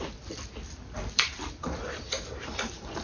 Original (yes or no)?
yes